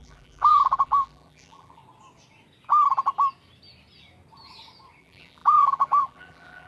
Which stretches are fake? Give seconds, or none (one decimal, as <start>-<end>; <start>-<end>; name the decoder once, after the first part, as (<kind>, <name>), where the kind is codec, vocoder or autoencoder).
0.0-1.8 (vocoder, BigVGAN v2); 5.0-6.7